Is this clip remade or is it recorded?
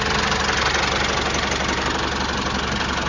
recorded